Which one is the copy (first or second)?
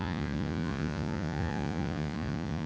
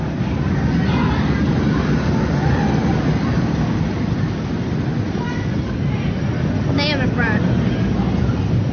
first